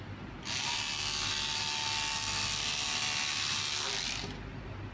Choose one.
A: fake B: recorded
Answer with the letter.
B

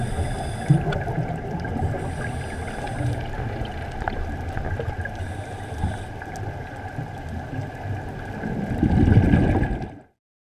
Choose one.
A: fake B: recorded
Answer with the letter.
B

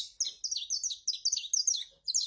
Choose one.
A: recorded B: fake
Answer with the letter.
A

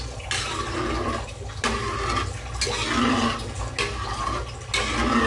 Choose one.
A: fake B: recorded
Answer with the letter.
B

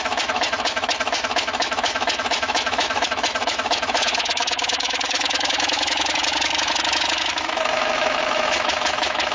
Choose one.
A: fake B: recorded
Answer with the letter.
A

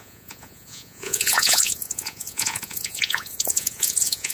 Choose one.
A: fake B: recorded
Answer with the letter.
A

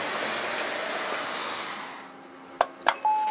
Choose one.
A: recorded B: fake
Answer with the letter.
A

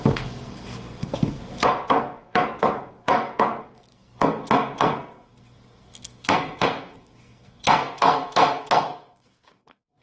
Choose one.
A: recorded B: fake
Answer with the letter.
B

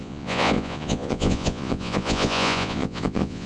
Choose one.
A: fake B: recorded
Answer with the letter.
A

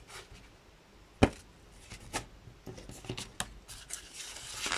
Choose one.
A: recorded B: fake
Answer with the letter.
A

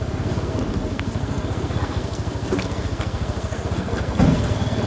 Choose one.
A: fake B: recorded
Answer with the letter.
A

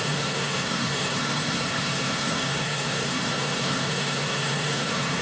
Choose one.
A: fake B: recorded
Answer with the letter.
A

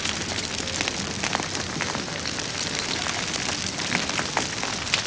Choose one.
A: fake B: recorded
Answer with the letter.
B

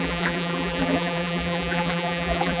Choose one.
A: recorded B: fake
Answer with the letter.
B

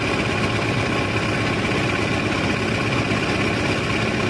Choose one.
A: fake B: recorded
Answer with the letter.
B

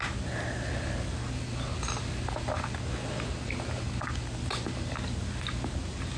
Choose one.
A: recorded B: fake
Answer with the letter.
A